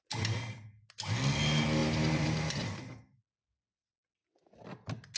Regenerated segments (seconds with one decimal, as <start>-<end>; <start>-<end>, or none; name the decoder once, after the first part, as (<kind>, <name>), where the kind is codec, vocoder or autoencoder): 1.8-2.8 (vocoder, BigVGAN v2)